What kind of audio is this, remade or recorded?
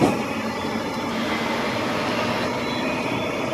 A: recorded